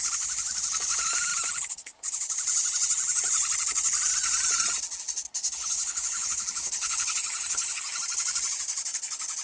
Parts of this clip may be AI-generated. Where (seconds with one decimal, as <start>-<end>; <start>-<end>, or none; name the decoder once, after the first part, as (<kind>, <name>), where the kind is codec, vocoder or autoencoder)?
5.3-8.0 (codec, HILCodec)